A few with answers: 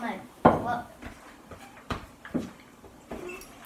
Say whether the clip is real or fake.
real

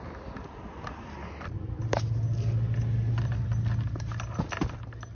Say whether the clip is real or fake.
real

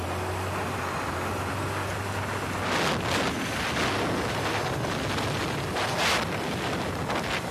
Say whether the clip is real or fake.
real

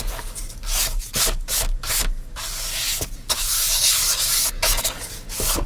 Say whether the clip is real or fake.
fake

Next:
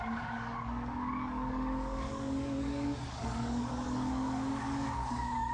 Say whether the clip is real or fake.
fake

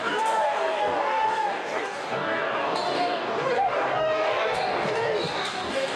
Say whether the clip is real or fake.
fake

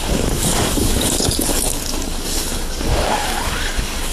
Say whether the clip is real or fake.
fake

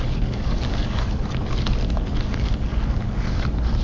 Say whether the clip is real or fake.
fake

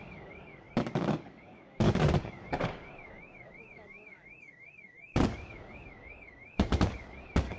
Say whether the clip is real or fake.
fake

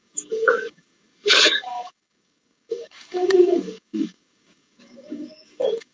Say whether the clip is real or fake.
fake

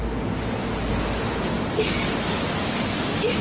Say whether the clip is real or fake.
real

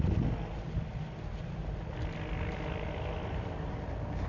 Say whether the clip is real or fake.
real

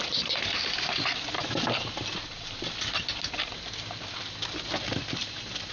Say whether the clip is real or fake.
real